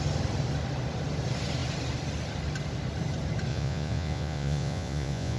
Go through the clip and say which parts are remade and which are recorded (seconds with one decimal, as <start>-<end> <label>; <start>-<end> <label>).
0.0-3.5 recorded; 3.5-5.4 remade